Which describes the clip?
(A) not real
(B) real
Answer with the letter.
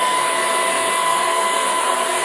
A